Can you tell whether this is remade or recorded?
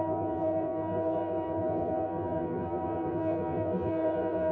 remade